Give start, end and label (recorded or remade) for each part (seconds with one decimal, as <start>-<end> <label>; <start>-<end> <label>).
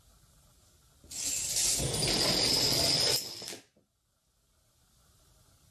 0.0-5.7 recorded